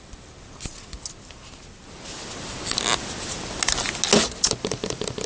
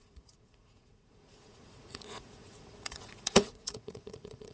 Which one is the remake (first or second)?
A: second